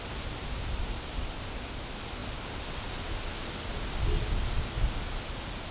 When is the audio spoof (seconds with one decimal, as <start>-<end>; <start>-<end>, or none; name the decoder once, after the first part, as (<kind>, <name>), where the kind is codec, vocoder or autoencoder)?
none

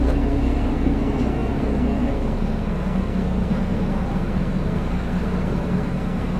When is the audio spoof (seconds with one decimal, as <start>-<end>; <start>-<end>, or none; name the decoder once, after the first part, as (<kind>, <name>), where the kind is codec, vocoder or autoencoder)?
0.0-6.4 (codec, SNAC)

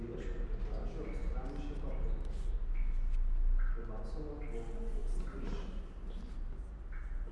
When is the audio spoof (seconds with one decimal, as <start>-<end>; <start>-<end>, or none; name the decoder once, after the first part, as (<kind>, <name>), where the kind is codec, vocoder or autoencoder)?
none

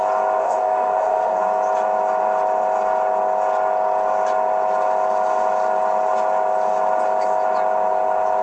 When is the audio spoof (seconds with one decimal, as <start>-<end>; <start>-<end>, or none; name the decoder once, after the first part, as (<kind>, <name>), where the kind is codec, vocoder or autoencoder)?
0.4-1.4 (codec, SNAC)

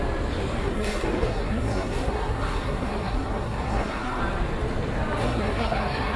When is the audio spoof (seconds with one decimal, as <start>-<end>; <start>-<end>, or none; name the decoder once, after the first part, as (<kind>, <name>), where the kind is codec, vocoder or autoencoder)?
0.6-4.2 (codec, SNAC); 5.2-6.2